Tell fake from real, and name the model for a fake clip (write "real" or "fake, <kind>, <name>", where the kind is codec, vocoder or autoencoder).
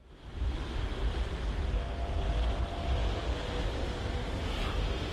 real